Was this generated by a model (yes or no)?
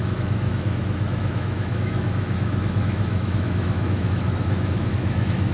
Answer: yes